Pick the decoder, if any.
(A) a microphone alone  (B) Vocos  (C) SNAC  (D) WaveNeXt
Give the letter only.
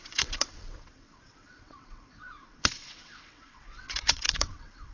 D